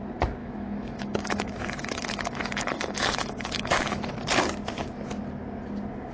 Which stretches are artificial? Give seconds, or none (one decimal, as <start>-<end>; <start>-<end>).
0.4-4.1